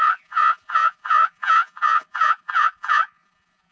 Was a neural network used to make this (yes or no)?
yes